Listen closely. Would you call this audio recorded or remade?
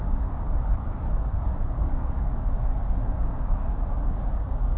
remade